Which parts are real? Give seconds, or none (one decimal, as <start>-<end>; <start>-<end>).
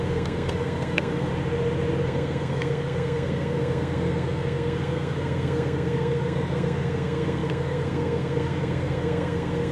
1.3-2.0